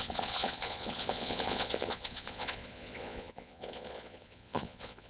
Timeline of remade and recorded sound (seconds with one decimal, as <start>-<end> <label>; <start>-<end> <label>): 0.0-5.1 remade